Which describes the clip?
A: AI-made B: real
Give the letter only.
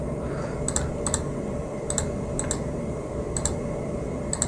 B